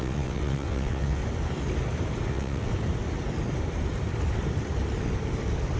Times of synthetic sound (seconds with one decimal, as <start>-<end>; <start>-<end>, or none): 0.0-1.2; 2.3-2.7

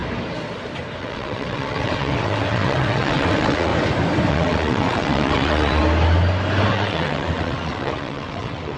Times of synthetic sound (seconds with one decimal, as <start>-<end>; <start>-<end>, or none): 1.0-3.7; 4.3-5.8; 6.7-8.8

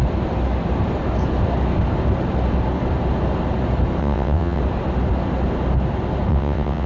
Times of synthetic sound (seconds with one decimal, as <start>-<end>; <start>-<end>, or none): 4.0-4.6; 6.3-6.9

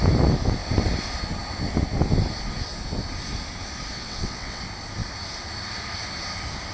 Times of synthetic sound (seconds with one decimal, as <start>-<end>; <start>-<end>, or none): 3.9-4.6